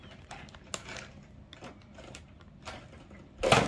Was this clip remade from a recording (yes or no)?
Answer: no